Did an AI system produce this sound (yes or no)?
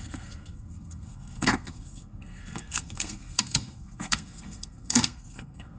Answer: yes